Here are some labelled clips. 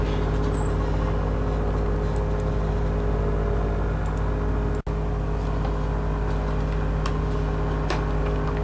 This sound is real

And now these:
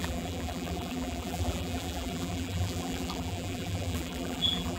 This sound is fake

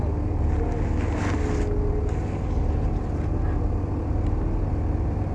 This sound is real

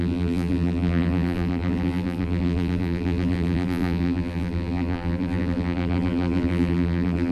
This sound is fake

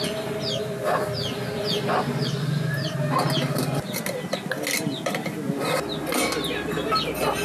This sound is real